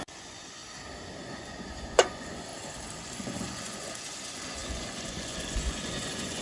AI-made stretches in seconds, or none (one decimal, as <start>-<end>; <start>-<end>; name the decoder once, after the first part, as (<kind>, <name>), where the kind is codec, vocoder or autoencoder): 0.0-0.6 (vocoder, Vocos); 1.2-2.5; 3.0-6.4